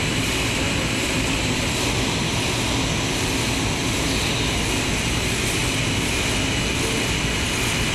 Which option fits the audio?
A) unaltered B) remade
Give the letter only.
A